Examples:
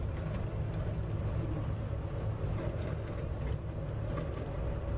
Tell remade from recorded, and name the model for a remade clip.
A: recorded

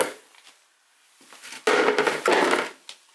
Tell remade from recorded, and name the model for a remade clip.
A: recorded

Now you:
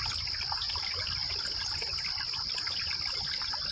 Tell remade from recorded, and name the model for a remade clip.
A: recorded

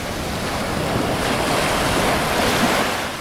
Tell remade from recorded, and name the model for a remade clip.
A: recorded